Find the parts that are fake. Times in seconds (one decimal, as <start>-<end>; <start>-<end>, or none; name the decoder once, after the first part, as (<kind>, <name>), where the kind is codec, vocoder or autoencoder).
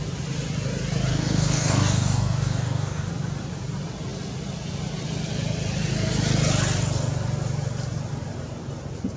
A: 1.1-3.1 (codec, DAC)